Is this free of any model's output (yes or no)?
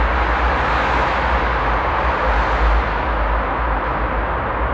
yes